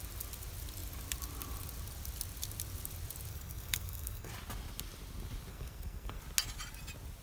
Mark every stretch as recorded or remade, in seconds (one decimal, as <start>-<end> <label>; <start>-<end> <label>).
0.0-3.3 recorded; 3.3-4.3 remade; 4.3-5.5 recorded; 5.5-6.2 remade; 6.2-7.2 recorded

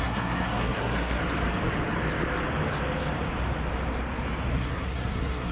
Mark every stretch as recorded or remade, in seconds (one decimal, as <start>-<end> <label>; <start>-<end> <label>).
0.0-1.2 remade; 1.2-4.5 recorded; 4.5-5.5 remade

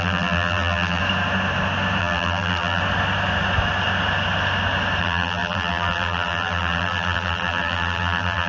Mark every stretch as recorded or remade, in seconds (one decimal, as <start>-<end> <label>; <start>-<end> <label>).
0.0-1.0 remade; 1.0-2.0 recorded; 2.0-2.8 remade; 2.8-5.0 recorded; 5.0-8.5 remade

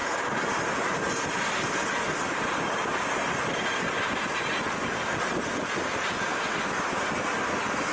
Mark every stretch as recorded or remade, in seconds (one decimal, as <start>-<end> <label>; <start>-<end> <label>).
0.0-7.9 recorded